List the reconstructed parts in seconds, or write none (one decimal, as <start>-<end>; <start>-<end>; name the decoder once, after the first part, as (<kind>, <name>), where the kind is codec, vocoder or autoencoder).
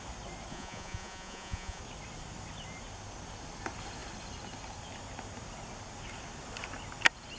0.5-1.8 (vocoder, Vocos)